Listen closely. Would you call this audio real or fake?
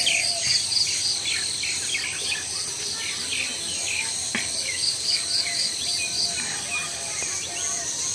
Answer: real